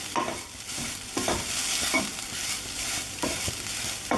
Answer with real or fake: fake